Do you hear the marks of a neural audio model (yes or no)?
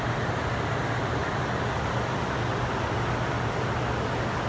no